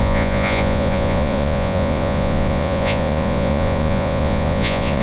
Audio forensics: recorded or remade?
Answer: remade